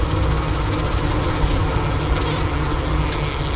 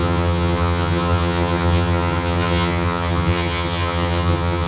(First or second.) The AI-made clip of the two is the second